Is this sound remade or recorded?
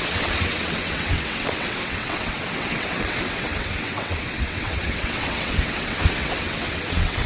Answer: remade